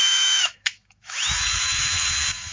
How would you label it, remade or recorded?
remade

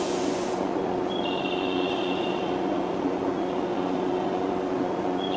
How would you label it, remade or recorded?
remade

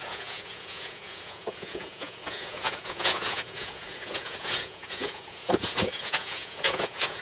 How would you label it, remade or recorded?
remade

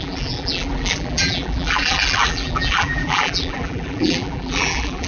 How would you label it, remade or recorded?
remade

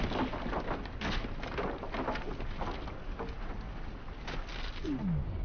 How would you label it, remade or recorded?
recorded